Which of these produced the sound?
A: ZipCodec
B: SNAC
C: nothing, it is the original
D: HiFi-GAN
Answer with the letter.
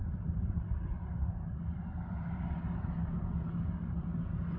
C